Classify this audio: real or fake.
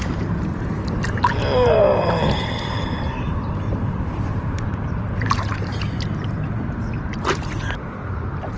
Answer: fake